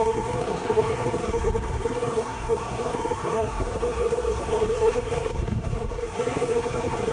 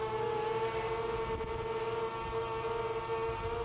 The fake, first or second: first